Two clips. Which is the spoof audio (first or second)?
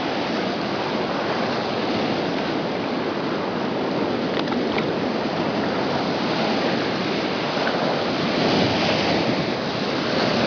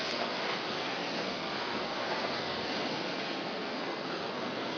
second